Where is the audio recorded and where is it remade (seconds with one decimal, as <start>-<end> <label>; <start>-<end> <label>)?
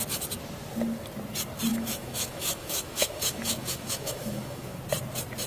0.0-1.7 recorded; 1.7-4.8 remade; 4.8-5.5 recorded